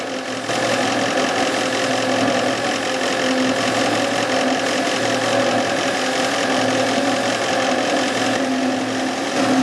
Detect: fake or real real